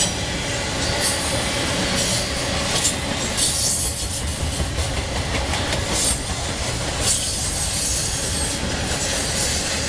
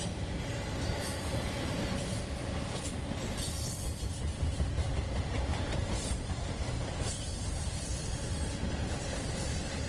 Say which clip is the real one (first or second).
first